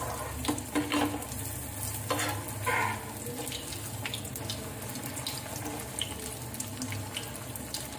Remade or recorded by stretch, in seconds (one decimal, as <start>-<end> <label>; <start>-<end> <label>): 0.0-8.0 recorded